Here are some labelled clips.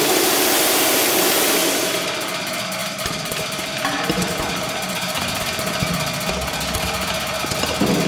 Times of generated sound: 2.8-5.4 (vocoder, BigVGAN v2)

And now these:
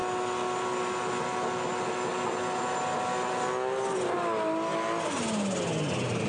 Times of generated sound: none

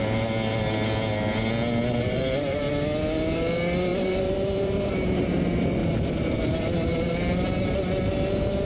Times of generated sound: 2.0-2.7 (vocoder, BigVGAN v2); 3.9-4.9; 5.8-7.6

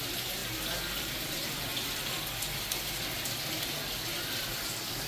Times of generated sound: 0.0-0.4 (vocoder, BigVGAN v2); 1.0-1.7